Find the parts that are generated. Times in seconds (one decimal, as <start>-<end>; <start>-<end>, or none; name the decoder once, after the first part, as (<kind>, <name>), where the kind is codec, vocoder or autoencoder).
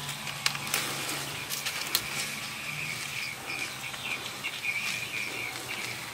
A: none